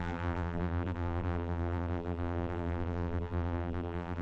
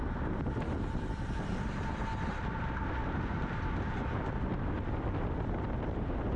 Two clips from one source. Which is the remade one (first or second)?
first